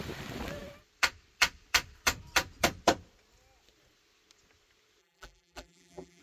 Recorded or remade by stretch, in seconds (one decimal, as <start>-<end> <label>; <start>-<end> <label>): 0.0-5.0 recorded; 5.0-6.2 remade